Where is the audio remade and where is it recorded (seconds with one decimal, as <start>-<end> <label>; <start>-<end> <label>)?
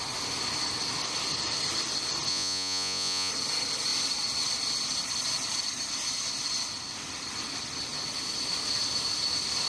0.0-2.3 recorded; 2.3-3.3 remade; 3.3-9.7 recorded